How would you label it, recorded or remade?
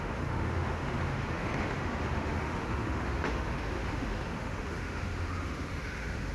remade